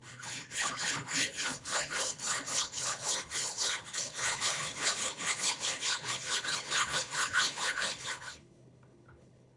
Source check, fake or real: fake